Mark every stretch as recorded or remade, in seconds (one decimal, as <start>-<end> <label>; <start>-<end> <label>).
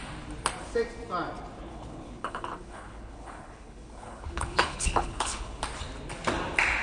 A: 0.0-1.7 recorded; 1.7-5.6 remade; 5.6-6.8 recorded